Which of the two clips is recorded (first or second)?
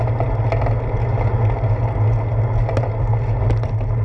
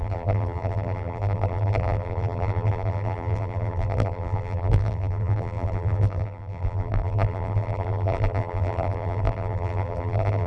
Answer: first